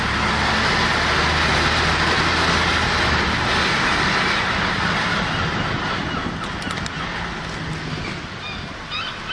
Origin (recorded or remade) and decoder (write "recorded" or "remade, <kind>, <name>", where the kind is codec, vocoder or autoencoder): recorded